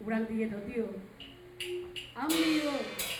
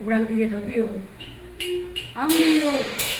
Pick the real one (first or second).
first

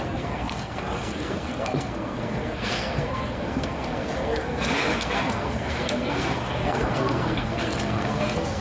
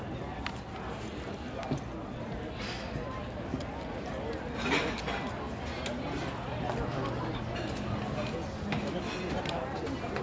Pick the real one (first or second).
second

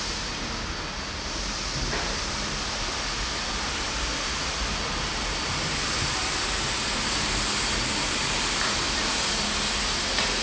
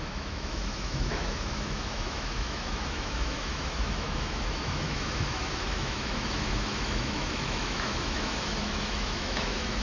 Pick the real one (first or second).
first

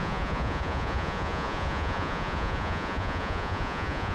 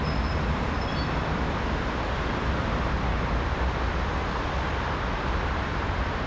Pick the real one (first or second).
second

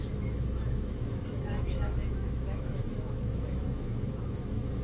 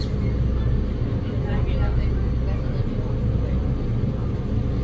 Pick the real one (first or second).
second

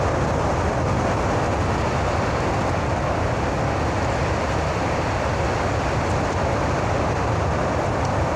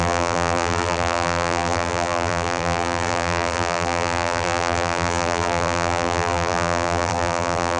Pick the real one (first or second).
first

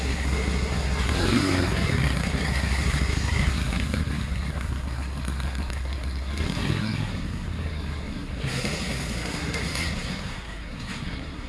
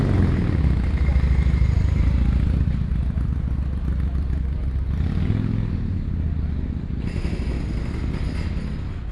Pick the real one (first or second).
second